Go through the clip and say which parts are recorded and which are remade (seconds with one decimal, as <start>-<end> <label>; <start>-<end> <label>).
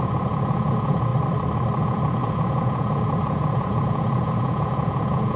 0.0-1.1 remade; 1.1-1.8 recorded; 1.8-5.4 remade